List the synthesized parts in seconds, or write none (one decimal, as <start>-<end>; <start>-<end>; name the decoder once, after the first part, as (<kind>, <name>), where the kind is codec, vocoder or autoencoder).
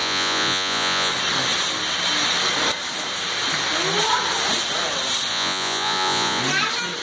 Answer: 0.0-1.1 (vocoder, Vocos); 5.3-6.4